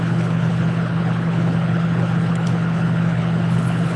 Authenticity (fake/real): fake